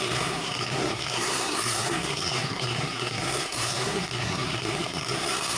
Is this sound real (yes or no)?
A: no